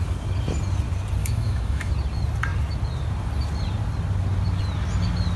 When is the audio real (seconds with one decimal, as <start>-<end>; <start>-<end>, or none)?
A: 0.0-1.2; 1.9-5.4